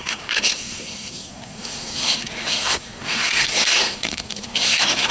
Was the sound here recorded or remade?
remade